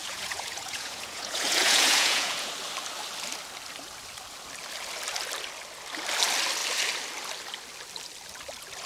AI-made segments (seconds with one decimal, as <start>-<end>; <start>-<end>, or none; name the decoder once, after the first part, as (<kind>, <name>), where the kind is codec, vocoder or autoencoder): 0.0-2.5 (vocoder, Vocos)